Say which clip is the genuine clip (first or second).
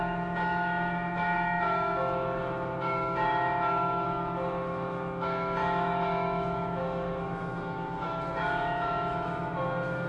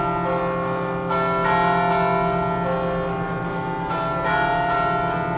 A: second